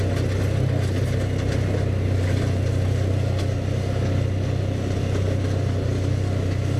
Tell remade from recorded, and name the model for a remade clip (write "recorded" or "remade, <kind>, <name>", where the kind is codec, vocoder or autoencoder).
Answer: recorded